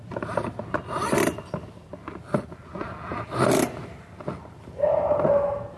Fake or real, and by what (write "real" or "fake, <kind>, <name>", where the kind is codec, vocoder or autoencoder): real